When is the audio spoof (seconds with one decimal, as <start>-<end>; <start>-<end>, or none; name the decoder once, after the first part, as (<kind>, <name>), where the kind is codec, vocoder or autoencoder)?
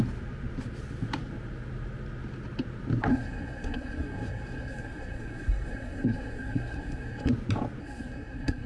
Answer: 3.1-7.3 (codec, SNAC); 7.8-8.7